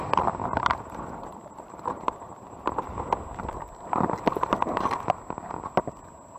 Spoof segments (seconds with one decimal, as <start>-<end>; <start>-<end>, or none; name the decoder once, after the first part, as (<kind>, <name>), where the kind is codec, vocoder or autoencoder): 0.4-3.0 (vocoder, BigVGAN v2)